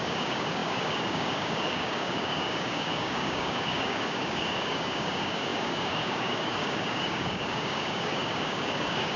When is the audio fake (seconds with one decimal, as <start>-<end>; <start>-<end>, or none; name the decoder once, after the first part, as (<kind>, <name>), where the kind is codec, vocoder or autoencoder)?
0.0-9.2 (codec, DAC)